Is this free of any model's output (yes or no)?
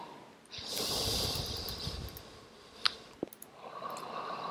yes